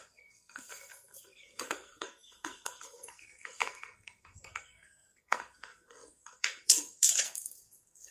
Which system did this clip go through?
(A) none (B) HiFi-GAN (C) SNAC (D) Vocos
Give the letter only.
C